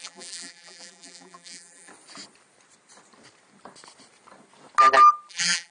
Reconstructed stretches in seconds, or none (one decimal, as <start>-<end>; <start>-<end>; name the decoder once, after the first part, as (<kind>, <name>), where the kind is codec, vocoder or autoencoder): 0.0-1.9 (vocoder, BigVGAN v2); 5.3-5.7

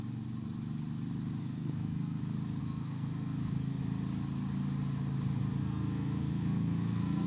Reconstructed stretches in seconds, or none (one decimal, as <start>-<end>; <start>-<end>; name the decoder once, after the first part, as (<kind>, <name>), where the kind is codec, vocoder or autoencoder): 1.4-2.2 (codec, SNAC); 2.6-3.8; 5.6-7.3

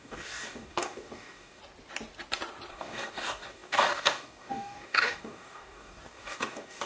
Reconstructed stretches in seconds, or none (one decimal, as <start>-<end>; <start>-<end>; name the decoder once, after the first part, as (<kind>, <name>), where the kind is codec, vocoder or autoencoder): 0.0-1.6 (codec, DAC); 2.7-6.9

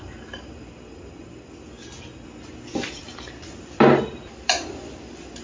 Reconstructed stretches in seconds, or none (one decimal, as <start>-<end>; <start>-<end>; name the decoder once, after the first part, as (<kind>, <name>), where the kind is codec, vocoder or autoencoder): none

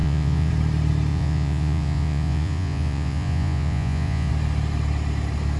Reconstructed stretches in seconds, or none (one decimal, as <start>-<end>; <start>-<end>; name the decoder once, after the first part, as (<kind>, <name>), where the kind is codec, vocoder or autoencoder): 0.0-0.5 (vocoder, Vocos); 1.1-4.3

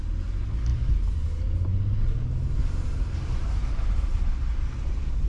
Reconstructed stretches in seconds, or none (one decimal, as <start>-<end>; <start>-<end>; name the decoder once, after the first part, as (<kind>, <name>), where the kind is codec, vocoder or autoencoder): none

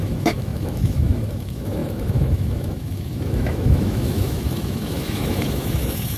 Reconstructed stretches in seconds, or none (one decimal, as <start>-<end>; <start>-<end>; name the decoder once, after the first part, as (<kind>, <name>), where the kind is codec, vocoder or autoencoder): 0.0-6.2 (autoencoder, DAC-VAE)

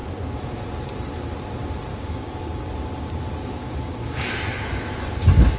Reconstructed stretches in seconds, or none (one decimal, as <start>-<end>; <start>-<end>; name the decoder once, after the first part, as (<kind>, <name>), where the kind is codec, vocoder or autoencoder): 1.9-3.2 (codec, DAC); 3.6-4.2